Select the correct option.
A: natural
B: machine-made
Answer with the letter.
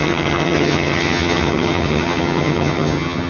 B